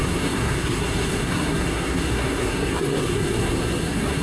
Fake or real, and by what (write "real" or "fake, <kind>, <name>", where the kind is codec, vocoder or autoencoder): fake, codec, SNAC